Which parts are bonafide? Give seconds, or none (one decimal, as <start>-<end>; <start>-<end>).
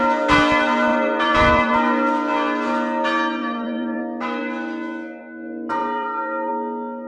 0.0-0.9; 1.7-3.4; 4.0-5.8; 6.5-7.1